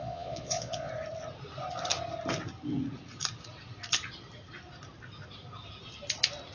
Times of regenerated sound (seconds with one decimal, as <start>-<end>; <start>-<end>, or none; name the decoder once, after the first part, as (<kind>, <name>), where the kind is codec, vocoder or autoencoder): 0.0-0.9 (vocoder, Vocos)